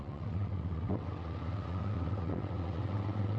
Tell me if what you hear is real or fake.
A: fake